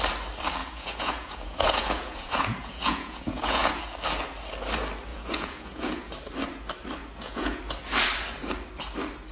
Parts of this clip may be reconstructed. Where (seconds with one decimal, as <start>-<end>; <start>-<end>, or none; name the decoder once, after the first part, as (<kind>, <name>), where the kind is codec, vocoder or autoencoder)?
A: 0.6-3.8 (vocoder, Vocos); 5.1-6.1; 7.0-7.6